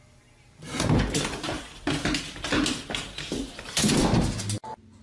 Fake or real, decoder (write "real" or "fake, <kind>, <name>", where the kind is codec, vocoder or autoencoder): real